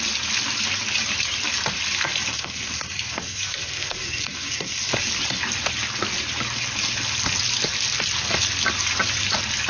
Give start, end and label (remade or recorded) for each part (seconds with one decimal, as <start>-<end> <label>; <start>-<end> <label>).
0.0-2.3 recorded; 2.3-4.9 remade; 4.9-9.7 recorded